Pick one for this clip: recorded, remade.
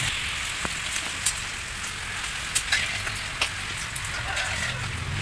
recorded